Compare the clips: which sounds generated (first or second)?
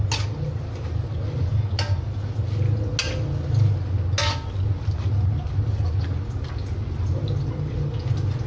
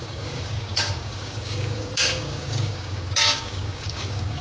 second